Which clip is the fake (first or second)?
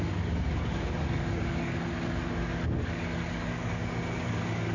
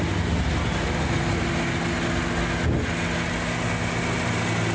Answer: first